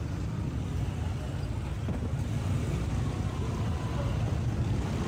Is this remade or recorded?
recorded